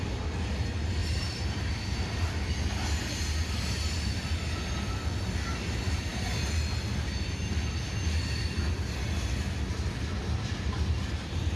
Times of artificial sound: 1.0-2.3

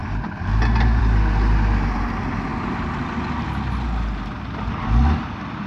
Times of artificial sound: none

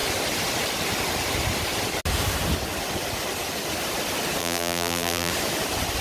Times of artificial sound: 4.4-5.3